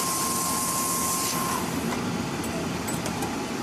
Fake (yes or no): no